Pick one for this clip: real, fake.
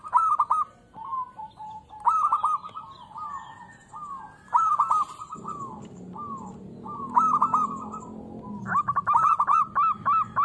real